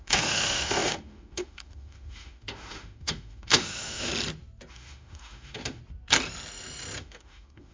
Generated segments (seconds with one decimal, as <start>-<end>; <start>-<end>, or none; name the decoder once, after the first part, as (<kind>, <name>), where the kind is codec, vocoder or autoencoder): 0.0-4.1 (autoencoder, DAC-VAE); 4.7-5.8; 7.0-7.7